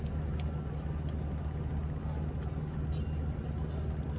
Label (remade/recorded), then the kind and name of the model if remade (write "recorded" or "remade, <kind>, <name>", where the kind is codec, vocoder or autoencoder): recorded